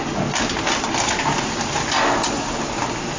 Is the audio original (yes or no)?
yes